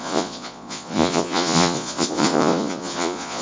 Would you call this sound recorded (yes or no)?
no